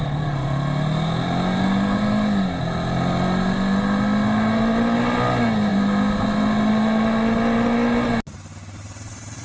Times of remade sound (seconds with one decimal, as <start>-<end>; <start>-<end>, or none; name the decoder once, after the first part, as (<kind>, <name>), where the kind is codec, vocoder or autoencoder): none